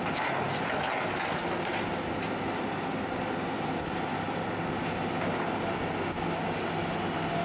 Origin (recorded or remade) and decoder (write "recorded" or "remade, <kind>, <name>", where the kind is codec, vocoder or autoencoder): recorded